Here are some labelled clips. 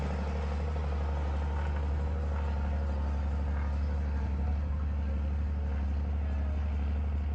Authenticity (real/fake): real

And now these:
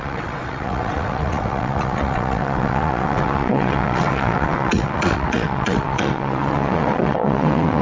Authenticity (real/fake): fake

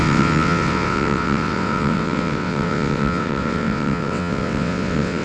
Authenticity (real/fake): fake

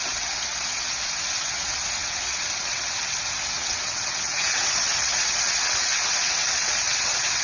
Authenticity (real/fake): fake